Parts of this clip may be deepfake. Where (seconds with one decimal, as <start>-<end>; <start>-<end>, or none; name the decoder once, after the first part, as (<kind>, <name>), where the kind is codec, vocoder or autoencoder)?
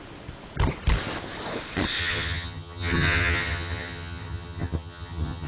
2.0-5.5 (vocoder, HiFi-GAN)